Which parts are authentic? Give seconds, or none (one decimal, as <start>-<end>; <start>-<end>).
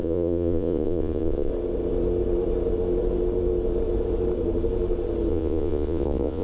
1.5-5.3